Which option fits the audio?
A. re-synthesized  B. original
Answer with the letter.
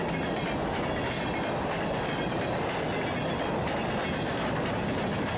B